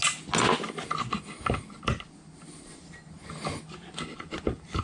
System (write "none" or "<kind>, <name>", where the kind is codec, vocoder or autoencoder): none